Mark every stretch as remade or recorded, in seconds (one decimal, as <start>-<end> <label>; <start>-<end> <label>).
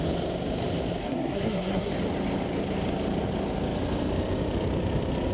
0.0-1.0 recorded; 1.0-1.9 remade; 1.9-5.3 recorded